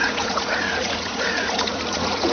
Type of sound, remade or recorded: remade